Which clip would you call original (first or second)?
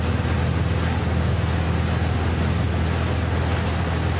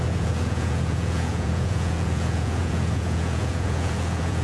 first